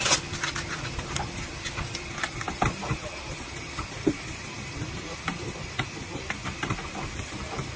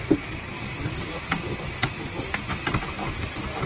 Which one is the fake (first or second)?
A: first